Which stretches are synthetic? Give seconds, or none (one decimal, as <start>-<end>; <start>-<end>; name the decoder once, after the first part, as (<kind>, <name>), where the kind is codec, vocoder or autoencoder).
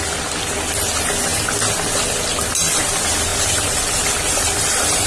3.3-5.1 (vocoder, BigVGAN v2)